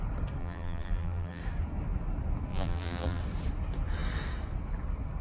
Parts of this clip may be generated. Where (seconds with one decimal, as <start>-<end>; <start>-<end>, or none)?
0.4-1.4; 2.5-3.2